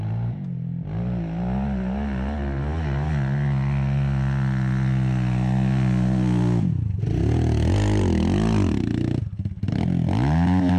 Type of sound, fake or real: real